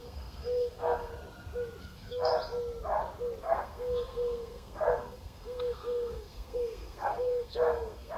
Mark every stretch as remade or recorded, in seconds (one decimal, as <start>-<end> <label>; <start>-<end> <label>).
0.0-1.1 remade; 1.1-1.8 recorded; 1.8-2.3 remade; 2.3-3.4 recorded; 3.4-8.2 remade